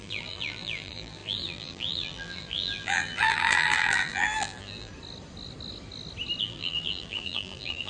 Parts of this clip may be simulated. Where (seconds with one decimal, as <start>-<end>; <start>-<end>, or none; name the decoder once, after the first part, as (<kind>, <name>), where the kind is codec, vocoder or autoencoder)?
0.0-4.9 (vocoder, BigVGAN v2); 6.4-7.9